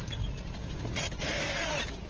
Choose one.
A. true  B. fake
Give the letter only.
A